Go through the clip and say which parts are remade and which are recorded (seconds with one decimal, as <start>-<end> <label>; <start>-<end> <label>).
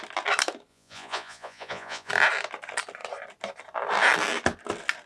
0.0-0.7 recorded; 0.7-2.1 remade; 2.1-5.1 recorded